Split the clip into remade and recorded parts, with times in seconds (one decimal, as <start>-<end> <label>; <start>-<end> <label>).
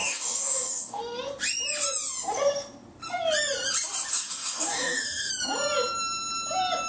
0.0-1.0 remade; 1.0-4.1 recorded; 4.1-5.3 remade; 5.3-6.9 recorded